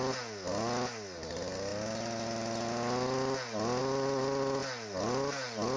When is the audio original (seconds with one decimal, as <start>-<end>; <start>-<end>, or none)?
0.0-5.8